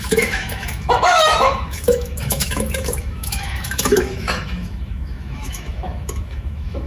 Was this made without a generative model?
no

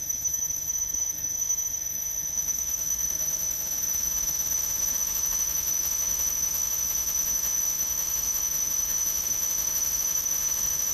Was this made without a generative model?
no